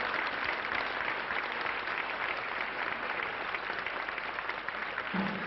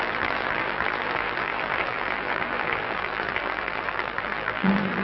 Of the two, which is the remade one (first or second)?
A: second